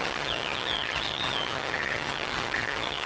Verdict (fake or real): fake